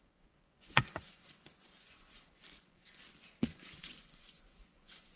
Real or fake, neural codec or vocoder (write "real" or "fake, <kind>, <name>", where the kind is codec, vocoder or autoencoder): fake, vocoder, Vocos